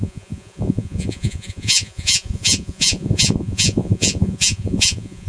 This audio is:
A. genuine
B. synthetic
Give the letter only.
B